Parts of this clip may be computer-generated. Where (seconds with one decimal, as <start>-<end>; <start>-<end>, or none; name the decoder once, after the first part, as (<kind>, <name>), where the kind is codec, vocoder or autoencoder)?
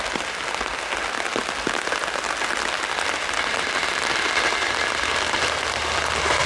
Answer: none